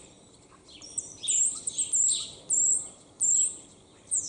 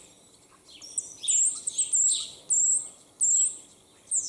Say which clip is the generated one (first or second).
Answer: first